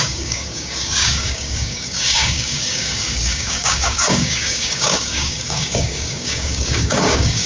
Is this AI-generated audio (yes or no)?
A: yes